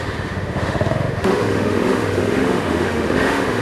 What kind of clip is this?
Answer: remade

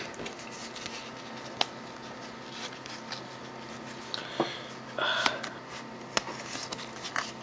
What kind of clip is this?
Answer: recorded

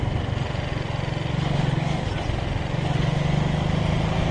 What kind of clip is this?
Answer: recorded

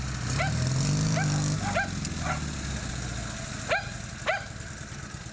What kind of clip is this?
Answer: recorded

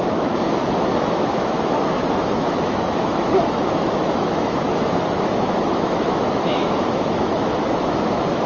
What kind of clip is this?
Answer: remade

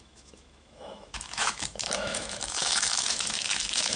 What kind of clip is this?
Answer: remade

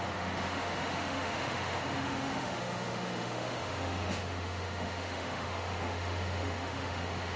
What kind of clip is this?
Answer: remade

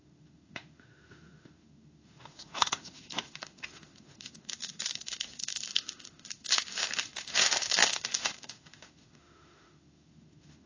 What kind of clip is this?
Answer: remade